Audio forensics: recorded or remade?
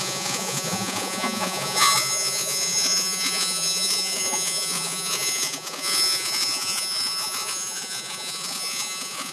remade